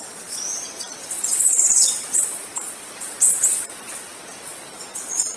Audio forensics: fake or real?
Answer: fake